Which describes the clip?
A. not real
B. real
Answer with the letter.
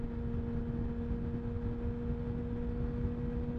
B